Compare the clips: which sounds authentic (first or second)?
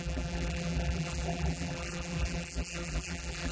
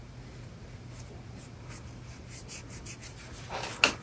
second